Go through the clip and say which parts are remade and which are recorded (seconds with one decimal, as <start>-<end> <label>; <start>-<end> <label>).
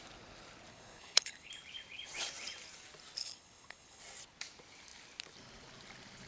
0.0-0.7 recorded; 0.7-1.5 remade; 1.5-3.2 recorded; 3.2-4.0 remade; 4.0-6.3 recorded